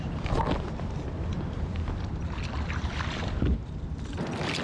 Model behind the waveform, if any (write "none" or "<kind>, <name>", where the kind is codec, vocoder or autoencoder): none